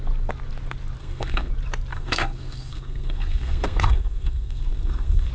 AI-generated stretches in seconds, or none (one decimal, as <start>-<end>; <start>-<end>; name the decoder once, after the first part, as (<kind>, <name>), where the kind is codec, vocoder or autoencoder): 1.0-1.5 (codec, SNAC); 1.9-5.3